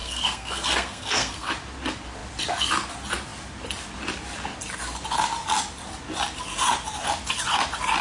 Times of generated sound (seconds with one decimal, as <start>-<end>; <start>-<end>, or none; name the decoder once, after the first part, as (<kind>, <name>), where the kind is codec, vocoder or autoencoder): 0.0-1.5 (codec, SNAC)